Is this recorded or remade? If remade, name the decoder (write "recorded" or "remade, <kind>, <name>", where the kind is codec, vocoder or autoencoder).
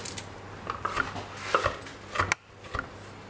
recorded